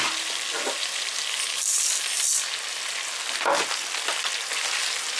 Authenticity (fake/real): real